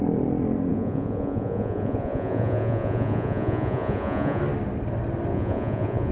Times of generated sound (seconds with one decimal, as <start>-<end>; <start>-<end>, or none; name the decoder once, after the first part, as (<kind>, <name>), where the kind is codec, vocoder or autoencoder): 0.7-4.4 (vocoder, Vocos); 5.3-6.1